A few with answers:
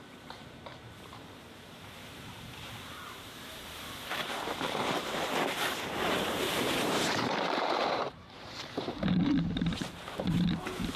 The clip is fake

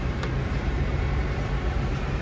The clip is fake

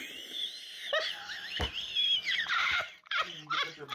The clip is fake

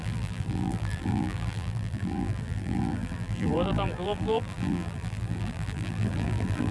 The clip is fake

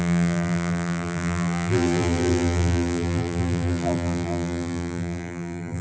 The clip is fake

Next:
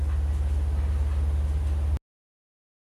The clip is real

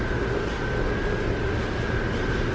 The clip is real